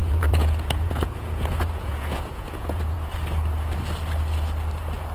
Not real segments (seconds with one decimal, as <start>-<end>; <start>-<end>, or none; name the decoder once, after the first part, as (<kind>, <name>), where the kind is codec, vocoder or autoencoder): 0.0-3.1 (vocoder, Vocos)